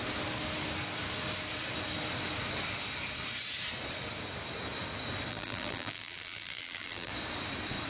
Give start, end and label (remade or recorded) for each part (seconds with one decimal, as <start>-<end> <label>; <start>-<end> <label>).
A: 0.0-5.3 recorded; 5.3-7.1 remade; 7.1-7.9 recorded